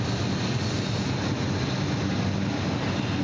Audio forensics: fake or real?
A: real